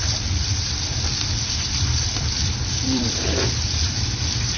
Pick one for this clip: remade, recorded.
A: remade